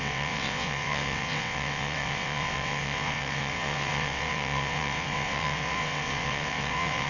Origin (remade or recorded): remade